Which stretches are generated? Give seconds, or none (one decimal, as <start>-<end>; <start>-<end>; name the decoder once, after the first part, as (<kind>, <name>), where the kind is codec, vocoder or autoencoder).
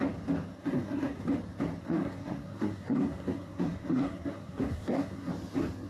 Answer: 0.6-1.2 (codec, SNAC); 1.8-5.3